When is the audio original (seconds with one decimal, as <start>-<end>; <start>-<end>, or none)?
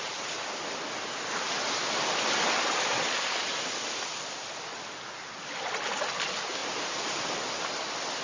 0.0-8.2